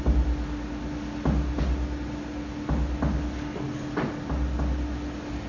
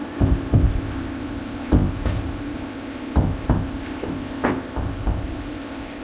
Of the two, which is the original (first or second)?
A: first